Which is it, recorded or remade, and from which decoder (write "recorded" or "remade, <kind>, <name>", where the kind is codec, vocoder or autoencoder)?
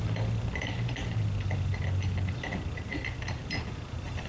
recorded